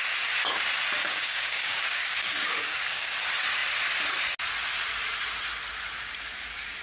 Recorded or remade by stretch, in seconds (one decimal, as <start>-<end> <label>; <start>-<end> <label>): 0.0-1.0 recorded; 1.0-3.2 remade; 3.2-6.8 recorded